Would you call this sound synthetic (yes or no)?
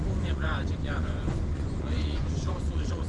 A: yes